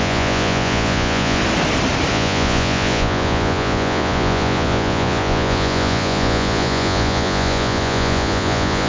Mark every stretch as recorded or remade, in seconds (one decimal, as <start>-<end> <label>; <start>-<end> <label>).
0.0-1.4 remade; 1.4-2.1 recorded; 2.1-8.9 remade